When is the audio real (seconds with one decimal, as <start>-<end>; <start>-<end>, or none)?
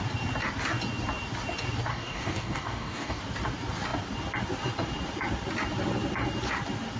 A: 0.0-1.9; 3.2-7.0